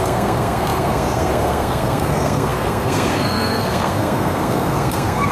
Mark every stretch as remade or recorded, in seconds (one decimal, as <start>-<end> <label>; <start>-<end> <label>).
0.0-5.3 remade